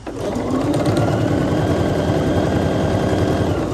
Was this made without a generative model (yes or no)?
yes